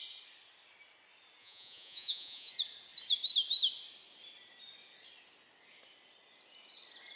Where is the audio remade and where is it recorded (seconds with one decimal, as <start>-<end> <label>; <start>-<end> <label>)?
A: 0.0-1.4 recorded; 1.4-2.5 remade; 2.5-7.2 recorded